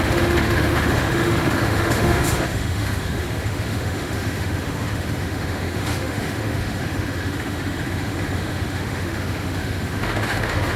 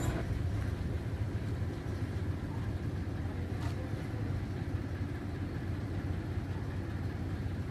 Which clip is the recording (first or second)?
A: second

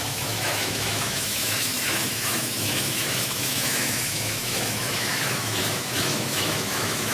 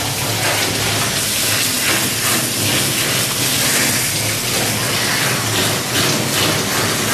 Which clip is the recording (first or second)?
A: second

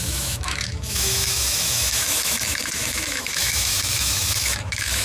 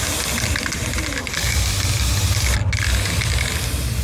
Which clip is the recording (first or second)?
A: second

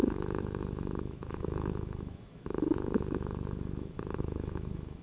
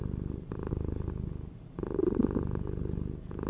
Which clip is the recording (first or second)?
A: second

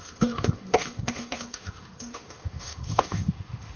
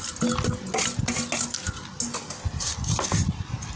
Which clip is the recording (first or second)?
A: second